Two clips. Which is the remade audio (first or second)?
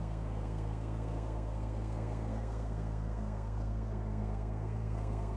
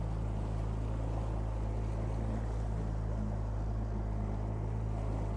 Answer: first